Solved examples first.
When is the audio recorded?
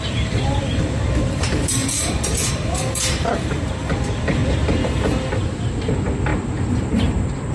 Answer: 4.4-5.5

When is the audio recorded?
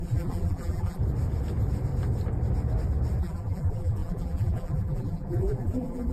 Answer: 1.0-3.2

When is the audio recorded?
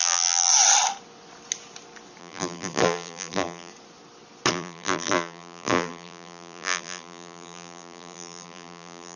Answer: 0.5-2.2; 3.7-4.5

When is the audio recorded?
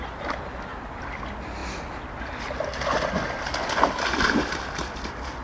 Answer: 0.0-0.7; 1.2-5.4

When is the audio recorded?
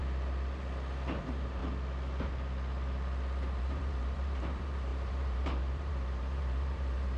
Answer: 0.0-1.2; 1.6-3.6